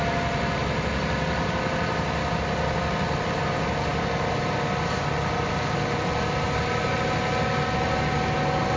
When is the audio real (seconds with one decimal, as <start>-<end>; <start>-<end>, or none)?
0.0-8.8